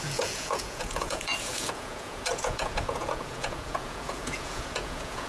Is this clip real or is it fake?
fake